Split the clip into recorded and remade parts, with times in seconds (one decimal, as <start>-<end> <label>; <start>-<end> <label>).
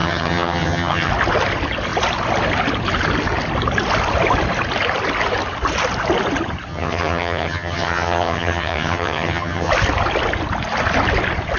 0.0-1.1 remade; 1.1-6.7 recorded; 6.7-9.7 remade; 9.7-11.6 recorded